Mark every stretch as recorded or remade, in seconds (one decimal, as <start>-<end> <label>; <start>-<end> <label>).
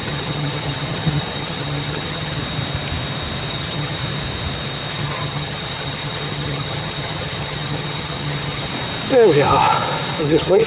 0.0-2.4 remade; 2.4-3.5 recorded; 3.5-4.0 remade; 4.0-4.9 recorded; 4.9-8.7 remade; 8.7-10.2 recorded; 10.2-10.7 remade